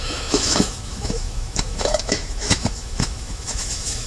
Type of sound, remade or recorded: remade